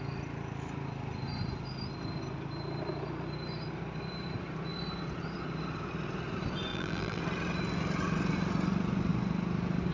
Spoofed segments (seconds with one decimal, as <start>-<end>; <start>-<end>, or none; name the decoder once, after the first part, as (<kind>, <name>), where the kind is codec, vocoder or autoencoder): 6.7-7.2 (vocoder, BigVGAN v2)